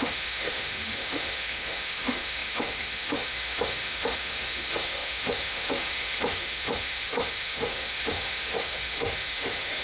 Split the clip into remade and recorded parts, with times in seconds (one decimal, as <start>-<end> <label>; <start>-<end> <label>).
0.0-9.8 remade